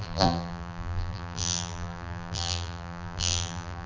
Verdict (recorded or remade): remade